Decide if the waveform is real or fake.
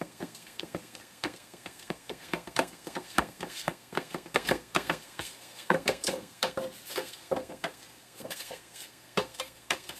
fake